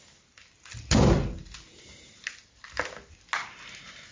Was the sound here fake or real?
real